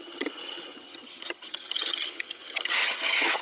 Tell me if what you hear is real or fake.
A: fake